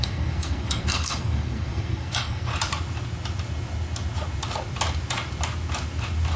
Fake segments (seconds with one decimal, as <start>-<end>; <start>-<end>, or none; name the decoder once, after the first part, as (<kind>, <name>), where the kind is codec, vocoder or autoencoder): 0.0-2.5 (codec, SNAC)